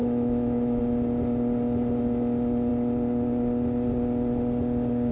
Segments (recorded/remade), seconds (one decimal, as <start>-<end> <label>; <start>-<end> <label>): 0.0-0.8 remade; 0.8-5.1 recorded

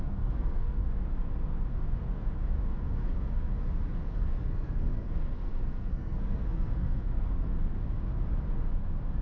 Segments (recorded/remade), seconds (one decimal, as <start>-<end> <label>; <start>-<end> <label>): 0.0-0.8 remade; 0.8-4.1 recorded; 4.1-7.8 remade; 7.8-9.2 recorded

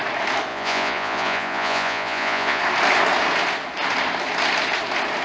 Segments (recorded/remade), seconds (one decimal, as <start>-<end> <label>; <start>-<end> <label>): 0.0-0.5 recorded; 0.5-2.6 remade; 2.6-5.2 recorded

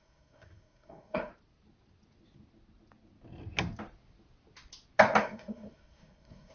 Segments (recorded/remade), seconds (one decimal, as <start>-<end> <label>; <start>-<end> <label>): 0.0-1.3 remade; 1.3-5.2 recorded; 5.2-6.5 remade

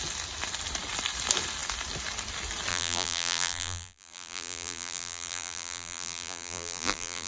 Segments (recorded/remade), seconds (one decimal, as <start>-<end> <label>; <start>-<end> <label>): 0.0-2.7 recorded; 2.7-7.3 remade